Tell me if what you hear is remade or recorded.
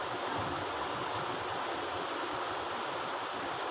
recorded